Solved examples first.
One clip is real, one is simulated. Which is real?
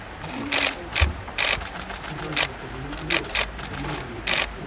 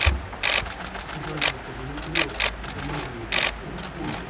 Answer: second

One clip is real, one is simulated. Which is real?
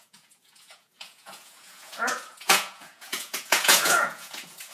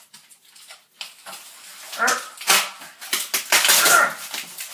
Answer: second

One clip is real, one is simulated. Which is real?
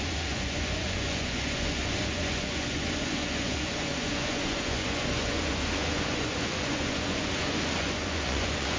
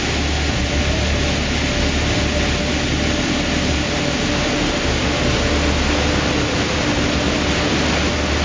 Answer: second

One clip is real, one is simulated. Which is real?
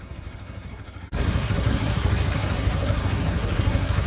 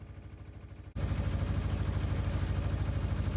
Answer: second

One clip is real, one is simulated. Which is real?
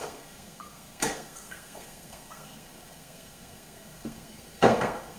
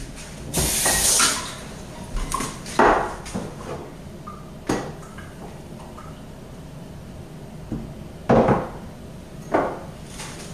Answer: second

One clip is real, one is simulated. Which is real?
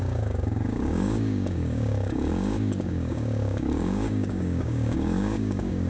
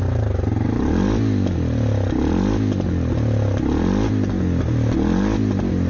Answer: second